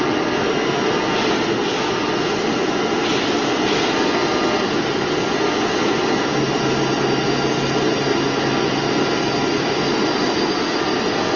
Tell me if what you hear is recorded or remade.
recorded